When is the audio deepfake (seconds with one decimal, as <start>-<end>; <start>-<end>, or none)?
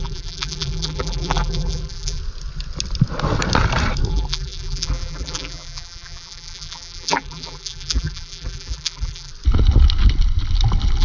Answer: 0.0-2.2; 4.1-9.3